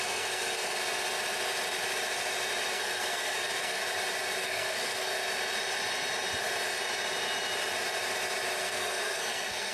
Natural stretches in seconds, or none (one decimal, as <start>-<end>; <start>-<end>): 0.8-2.7; 3.8-4.4; 5.1-8.6